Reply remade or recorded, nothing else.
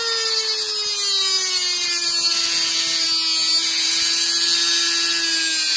recorded